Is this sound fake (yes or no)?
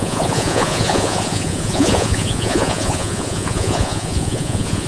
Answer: yes